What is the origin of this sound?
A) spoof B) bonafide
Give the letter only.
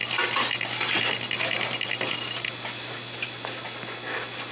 B